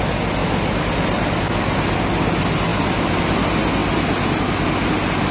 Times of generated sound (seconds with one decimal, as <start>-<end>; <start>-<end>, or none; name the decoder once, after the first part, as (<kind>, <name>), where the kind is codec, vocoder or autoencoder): 0.4-1.3 (vocoder, BigVGAN v2)